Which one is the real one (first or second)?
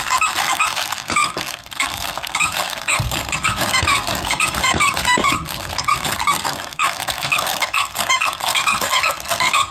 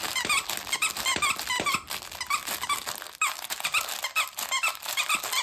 second